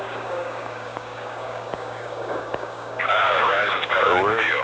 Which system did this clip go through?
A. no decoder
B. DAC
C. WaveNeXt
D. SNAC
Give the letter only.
B